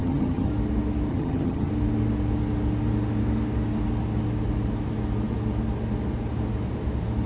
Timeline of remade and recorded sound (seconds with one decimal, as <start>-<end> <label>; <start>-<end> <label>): 0.0-0.5 remade; 0.5-1.1 recorded; 1.1-1.7 remade; 1.7-7.3 recorded